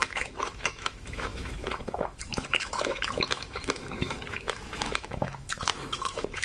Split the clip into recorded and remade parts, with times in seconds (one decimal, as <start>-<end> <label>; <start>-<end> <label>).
0.0-6.4 remade